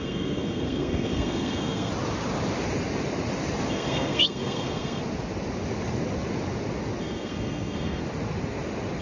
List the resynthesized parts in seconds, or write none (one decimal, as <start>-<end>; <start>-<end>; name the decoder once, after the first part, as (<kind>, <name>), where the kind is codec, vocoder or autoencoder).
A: 0.0-1.9 (codec, SNAC); 3.7-5.0; 7.0-8.0